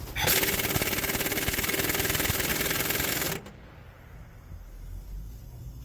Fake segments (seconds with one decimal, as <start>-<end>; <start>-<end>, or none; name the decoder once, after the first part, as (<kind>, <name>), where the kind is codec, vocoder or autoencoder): none